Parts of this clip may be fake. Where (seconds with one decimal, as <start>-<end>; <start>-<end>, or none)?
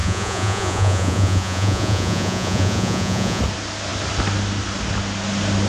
0.0-3.4